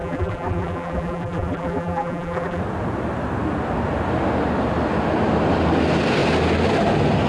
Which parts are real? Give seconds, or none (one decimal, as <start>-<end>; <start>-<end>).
2.6-7.3